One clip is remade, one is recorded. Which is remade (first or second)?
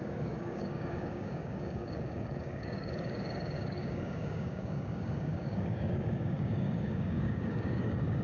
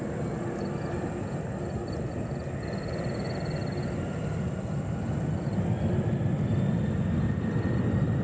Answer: first